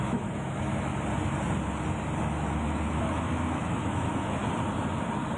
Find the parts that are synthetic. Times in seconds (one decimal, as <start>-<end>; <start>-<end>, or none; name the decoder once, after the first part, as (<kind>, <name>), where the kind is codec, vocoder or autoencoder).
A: 0.0-0.9 (autoencoder, DAC-VAE); 2.2-4.4